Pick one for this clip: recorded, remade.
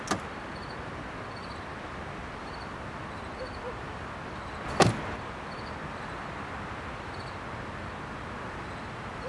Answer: recorded